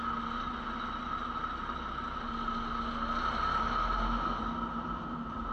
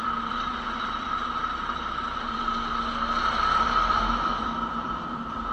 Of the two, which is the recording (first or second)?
first